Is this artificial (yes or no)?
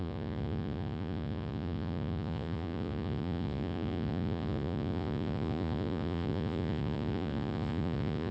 yes